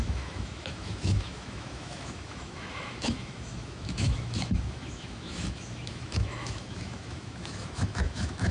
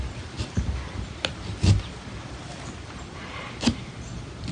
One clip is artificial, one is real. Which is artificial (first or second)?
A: first